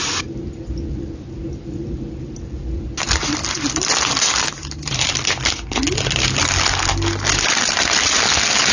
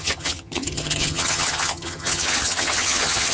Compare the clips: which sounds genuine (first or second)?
first